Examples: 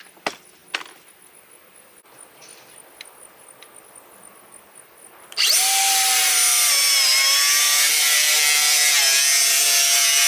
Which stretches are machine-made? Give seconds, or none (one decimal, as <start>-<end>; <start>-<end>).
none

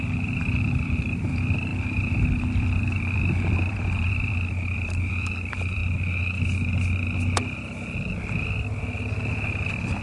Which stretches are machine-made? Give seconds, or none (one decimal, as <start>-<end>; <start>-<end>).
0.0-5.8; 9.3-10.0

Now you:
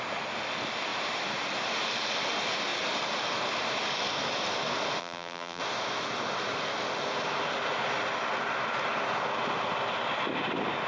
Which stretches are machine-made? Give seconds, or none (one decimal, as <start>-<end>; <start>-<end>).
5.0-5.6